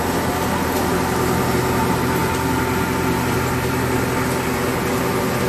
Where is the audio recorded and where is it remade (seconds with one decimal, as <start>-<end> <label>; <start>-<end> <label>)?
0.0-5.5 recorded